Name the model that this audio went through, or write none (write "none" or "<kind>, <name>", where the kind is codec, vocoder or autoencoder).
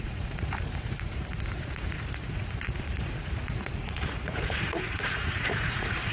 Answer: vocoder, Vocos